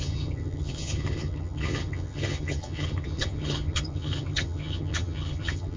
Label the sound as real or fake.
fake